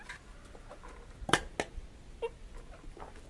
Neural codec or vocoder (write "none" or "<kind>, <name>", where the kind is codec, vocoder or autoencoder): none